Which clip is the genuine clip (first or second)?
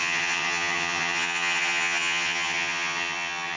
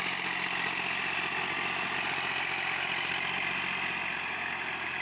second